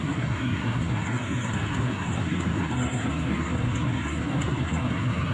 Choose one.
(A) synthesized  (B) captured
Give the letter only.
A